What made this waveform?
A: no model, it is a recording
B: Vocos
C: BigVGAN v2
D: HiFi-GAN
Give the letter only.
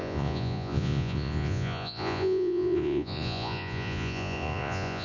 B